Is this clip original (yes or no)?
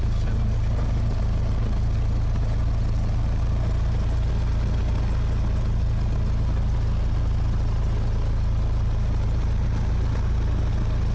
yes